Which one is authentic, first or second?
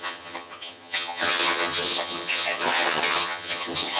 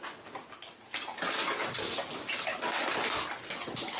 second